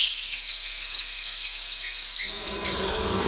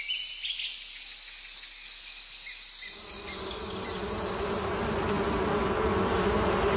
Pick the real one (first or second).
second